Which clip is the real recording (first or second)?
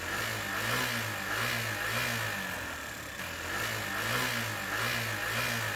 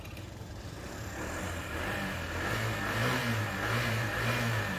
first